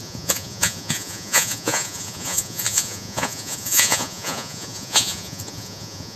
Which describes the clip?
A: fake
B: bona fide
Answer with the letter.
A